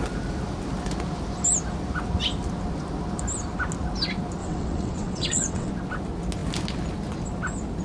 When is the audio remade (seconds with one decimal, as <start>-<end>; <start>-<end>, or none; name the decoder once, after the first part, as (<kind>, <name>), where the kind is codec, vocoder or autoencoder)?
4.4-5.7 (vocoder, WaveNeXt)